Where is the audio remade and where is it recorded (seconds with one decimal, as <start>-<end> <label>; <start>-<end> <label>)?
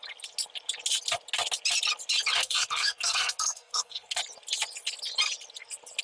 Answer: 0.0-2.4 recorded; 2.4-4.2 remade; 4.2-6.0 recorded